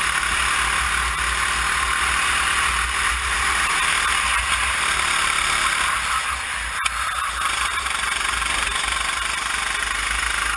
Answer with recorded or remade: recorded